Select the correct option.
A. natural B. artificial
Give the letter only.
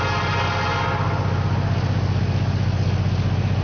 A